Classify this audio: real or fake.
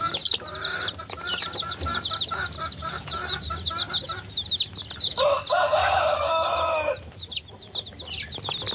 real